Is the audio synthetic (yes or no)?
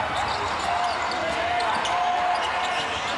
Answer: no